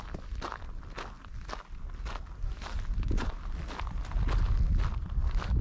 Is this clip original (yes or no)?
yes